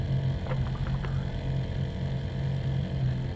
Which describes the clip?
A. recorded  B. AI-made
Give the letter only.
A